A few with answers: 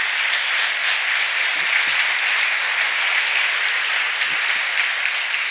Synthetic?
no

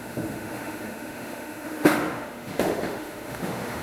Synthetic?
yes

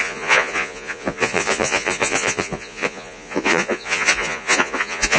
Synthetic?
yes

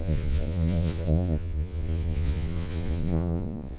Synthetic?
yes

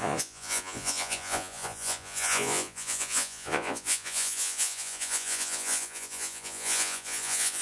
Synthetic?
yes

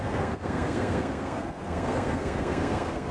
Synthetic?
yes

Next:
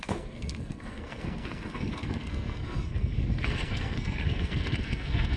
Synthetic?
yes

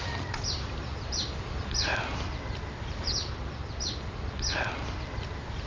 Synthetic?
no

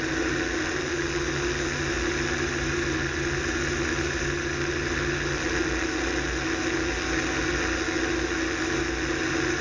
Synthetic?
no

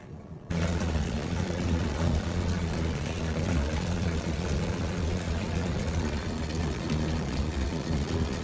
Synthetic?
yes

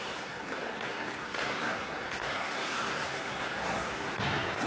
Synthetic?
yes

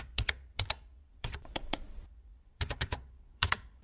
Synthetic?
yes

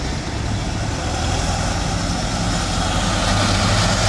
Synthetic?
no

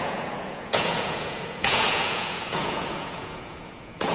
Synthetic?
yes